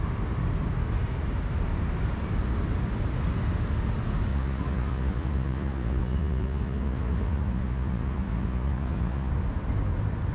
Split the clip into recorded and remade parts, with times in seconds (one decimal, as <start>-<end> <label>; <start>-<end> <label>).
0.0-4.3 recorded; 4.3-9.3 remade; 9.3-10.3 recorded